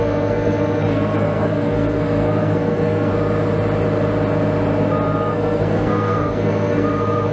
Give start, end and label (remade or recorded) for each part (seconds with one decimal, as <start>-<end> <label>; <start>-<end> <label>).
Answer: 0.0-3.1 remade; 3.1-5.3 recorded; 5.3-7.3 remade